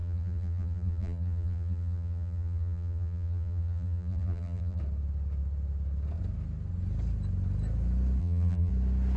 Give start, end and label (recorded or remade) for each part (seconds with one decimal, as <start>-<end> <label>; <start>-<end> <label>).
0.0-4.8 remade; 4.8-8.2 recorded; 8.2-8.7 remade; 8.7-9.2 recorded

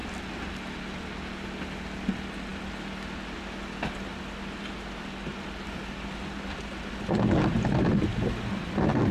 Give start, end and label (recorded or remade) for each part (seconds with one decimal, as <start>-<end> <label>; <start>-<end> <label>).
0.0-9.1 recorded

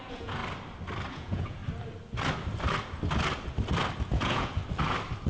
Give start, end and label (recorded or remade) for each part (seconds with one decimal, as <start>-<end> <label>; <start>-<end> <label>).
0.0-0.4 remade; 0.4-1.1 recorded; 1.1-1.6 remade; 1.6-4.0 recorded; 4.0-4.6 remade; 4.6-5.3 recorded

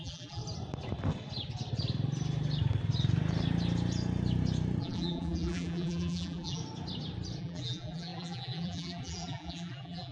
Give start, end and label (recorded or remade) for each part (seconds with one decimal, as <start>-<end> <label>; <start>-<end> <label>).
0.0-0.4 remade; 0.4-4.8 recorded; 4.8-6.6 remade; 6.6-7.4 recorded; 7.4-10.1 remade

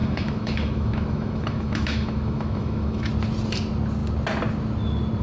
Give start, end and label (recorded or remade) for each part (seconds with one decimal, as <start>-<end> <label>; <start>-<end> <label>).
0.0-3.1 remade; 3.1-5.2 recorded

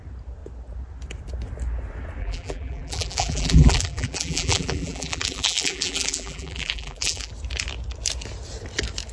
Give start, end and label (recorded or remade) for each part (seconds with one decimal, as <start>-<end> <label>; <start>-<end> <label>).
0.0-2.2 recorded; 2.2-7.3 remade; 7.3-9.1 recorded